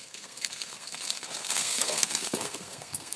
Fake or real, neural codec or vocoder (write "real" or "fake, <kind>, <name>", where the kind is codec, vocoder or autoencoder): fake, codec, SNAC